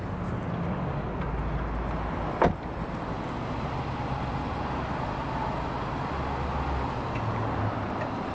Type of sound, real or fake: real